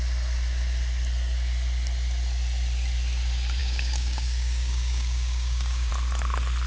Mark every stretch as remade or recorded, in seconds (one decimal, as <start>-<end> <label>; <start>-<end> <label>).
0.0-3.6 recorded; 3.6-5.9 remade; 5.9-6.7 recorded